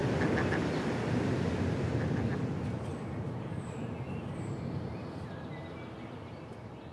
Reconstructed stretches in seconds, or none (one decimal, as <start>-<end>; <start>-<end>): none